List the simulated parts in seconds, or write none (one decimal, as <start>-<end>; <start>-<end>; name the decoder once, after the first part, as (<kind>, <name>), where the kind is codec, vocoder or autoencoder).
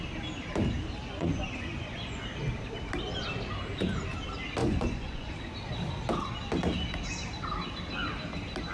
1.0-2.2 (vocoder, Vocos); 4.6-5.3